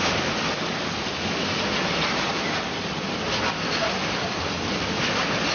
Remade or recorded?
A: recorded